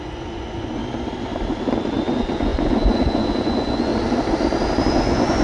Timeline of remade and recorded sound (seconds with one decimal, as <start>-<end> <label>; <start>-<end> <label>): 0.0-0.8 remade; 0.8-1.8 recorded; 1.8-3.9 remade; 3.9-4.9 recorded; 4.9-5.4 remade